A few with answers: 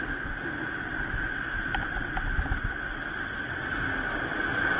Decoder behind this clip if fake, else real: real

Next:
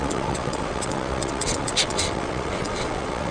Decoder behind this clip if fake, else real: fake, vocoder, WaveNeXt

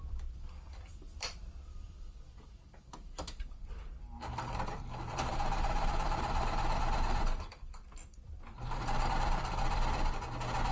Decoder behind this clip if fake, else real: fake, vocoder, BigVGAN v2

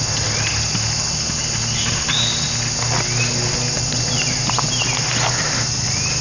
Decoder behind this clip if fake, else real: real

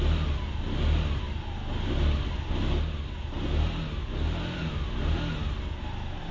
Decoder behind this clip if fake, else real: real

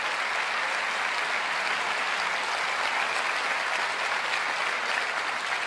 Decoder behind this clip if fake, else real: real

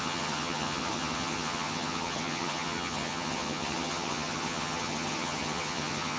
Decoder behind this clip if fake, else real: fake, vocoder, HiFi-GAN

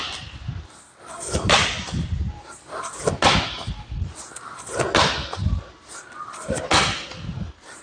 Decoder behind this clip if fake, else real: real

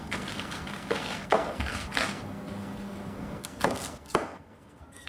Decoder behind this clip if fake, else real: fake, codec, SNAC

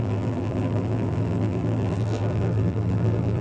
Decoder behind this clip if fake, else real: fake, vocoder, BigVGAN v2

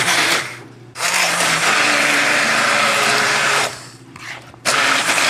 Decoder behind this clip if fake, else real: fake, vocoder, BigVGAN v2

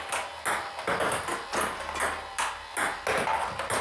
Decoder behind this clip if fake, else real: real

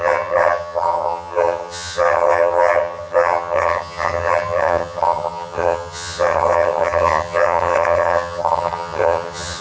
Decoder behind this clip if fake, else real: fake, vocoder, HiFi-GAN